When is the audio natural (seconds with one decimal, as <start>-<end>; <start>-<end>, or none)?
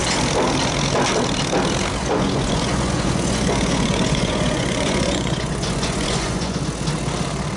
0.0-2.0; 6.6-7.6